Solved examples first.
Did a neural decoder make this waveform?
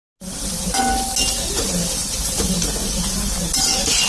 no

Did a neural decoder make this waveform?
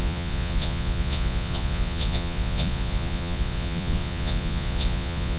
yes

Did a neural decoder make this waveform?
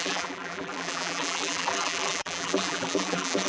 yes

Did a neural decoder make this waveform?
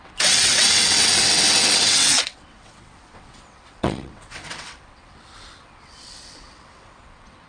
yes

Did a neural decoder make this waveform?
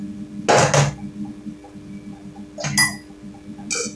no